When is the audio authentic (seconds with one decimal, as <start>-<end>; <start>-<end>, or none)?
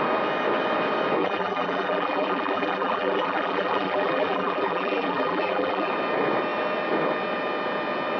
0.0-1.2; 5.9-8.2